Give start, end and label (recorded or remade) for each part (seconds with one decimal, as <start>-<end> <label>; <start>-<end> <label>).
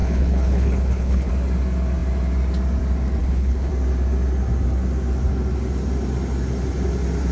0.0-1.3 remade; 1.3-3.2 recorded; 3.2-3.7 remade; 3.7-7.3 recorded